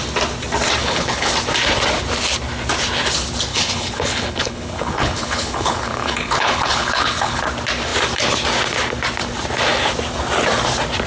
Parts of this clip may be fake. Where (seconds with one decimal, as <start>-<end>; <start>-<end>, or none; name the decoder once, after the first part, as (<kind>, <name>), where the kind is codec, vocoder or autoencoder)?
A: 0.8-1.3 (codec, HILCodec); 3.5-7.4